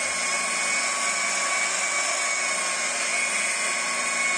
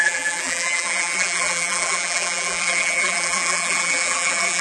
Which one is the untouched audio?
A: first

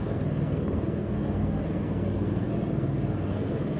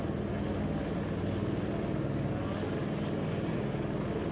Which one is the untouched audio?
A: second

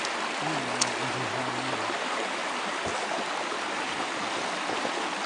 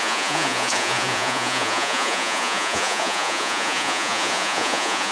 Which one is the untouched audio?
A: first